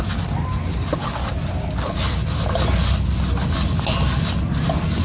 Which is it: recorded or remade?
recorded